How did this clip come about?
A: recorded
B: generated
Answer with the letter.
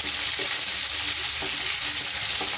A